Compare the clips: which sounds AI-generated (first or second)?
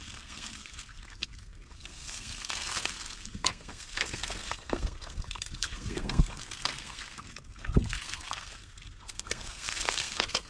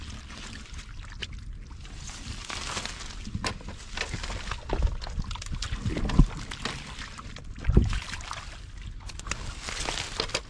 first